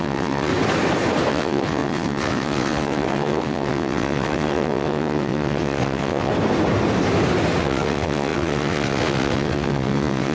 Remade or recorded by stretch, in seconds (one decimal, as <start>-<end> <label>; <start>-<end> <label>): 0.0-0.5 remade; 0.5-1.3 recorded; 1.3-6.3 remade; 6.3-7.6 recorded; 7.6-10.3 remade